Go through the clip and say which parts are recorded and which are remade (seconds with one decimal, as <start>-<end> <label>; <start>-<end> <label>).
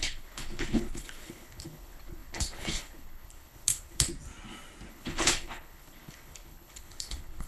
0.0-4.1 remade; 4.1-4.9 recorded; 4.9-7.5 remade